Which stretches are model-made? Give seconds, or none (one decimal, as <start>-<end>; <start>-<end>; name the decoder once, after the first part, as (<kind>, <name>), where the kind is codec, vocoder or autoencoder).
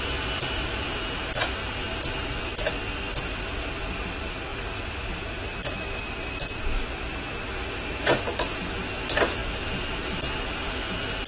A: 4.5-6.5 (vocoder, BigVGAN v2)